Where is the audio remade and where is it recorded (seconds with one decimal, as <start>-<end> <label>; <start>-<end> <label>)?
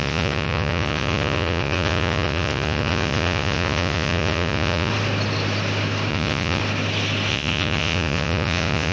0.0-4.9 remade; 4.9-6.1 recorded; 6.1-6.6 remade; 6.6-7.3 recorded; 7.3-8.9 remade